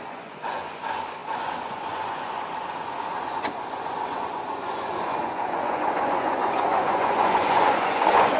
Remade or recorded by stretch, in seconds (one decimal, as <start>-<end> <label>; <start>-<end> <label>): 0.0-8.4 remade